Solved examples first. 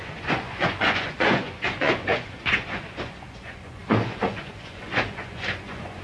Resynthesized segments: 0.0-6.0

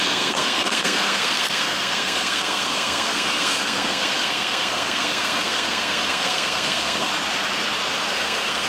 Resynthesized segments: 0.0-7.1; 8.1-8.7